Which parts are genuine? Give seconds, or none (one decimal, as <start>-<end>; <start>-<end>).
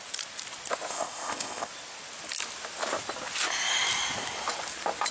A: 0.0-0.9; 1.7-5.1